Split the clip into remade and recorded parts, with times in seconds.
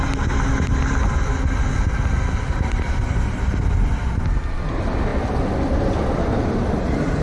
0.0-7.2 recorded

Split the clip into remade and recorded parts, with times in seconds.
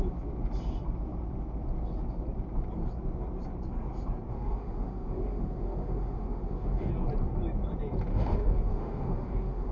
0.0-4.3 recorded; 4.3-6.9 remade; 6.9-8.1 recorded; 8.1-9.7 remade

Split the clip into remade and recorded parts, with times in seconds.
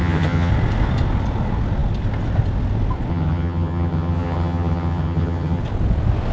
0.0-0.5 remade; 0.5-3.1 recorded; 3.1-5.6 remade; 5.6-6.3 recorded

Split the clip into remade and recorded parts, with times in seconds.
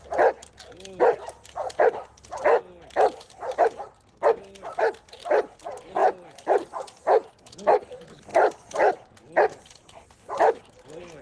0.0-11.2 recorded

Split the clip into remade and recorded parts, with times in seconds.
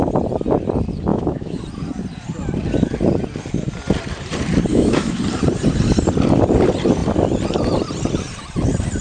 0.0-1.1 recorded; 1.1-1.6 remade; 1.6-4.7 recorded; 4.7-5.2 remade; 5.2-9.0 recorded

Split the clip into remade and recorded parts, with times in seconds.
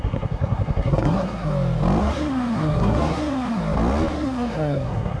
0.0-1.5 remade; 1.5-2.0 recorded; 2.0-3.6 remade; 3.6-4.1 recorded; 4.1-5.2 remade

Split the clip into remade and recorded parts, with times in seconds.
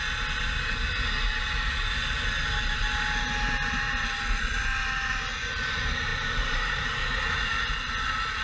0.0-8.4 recorded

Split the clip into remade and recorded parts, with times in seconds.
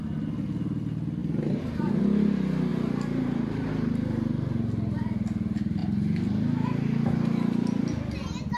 0.0-1.2 recorded; 1.2-2.0 remade; 2.0-2.7 recorded; 2.7-3.7 remade; 3.7-8.6 recorded